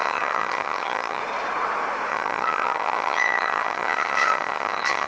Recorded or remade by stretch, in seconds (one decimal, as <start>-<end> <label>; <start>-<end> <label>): 0.0-1.2 remade; 1.2-2.1 recorded; 2.1-5.1 remade